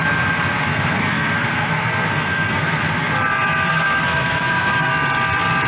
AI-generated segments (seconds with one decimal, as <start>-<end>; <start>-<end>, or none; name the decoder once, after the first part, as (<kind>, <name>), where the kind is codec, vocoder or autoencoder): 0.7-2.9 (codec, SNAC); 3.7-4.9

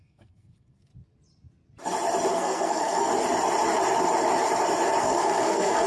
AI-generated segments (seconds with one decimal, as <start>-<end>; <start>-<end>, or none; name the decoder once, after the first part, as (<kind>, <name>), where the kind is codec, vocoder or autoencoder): 0.0-0.9 (codec, SNAC); 2.3-3.1; 5.0-5.9

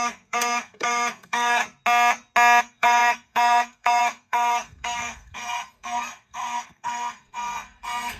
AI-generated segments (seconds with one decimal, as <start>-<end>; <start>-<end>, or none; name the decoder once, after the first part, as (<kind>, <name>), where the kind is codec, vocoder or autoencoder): 0.0-1.6 (codec, SNAC); 2.6-8.2

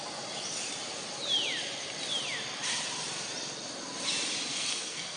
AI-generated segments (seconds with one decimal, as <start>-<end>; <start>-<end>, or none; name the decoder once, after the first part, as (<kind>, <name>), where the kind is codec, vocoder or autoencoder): 4.5-5.2 (codec, SNAC)

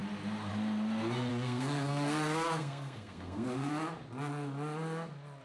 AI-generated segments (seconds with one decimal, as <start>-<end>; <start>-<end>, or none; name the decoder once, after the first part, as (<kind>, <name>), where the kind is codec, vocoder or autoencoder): 1.3-3.7 (codec, SNAC)